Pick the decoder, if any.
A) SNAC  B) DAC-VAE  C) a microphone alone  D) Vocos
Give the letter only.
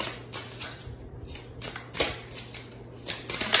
C